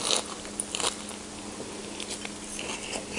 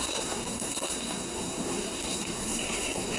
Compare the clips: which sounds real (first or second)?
first